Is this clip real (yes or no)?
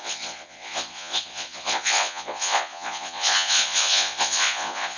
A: no